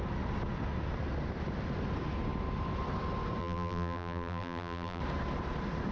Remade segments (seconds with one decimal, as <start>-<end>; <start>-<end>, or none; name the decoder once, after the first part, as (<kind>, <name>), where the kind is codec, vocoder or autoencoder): 3.4-5.0 (vocoder, BigVGAN v2)